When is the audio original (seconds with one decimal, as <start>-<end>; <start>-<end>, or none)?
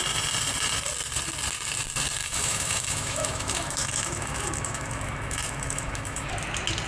0.0-2.2; 6.3-6.9